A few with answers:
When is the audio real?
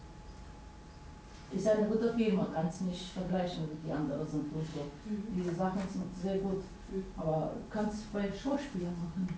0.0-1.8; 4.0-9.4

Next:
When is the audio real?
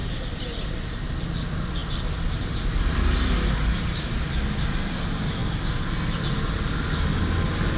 0.8-1.8; 4.2-7.8